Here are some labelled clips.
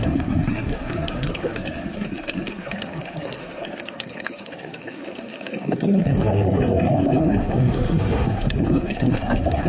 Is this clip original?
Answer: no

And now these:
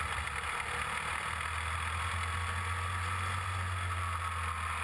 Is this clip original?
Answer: yes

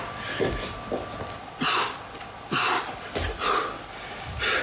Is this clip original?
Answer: yes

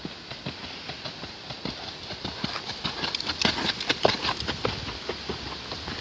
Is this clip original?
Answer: no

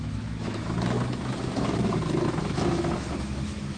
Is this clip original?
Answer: no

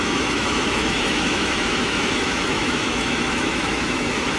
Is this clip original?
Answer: no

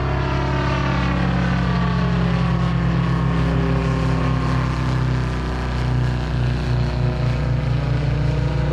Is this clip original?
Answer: yes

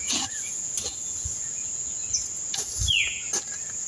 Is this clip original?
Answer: no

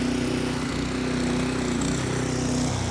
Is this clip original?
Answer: yes